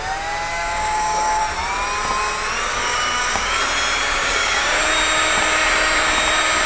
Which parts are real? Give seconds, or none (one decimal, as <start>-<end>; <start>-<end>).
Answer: 0.0-0.5; 1.4-2.7; 3.6-4.2; 4.8-6.7

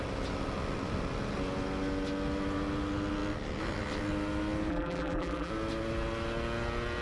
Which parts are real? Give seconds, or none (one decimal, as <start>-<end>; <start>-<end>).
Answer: 0.0-4.7; 5.5-7.0